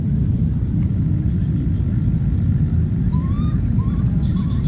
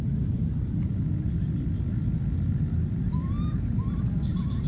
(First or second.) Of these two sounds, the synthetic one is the first